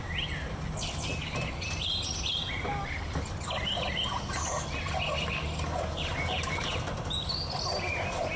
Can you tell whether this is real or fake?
real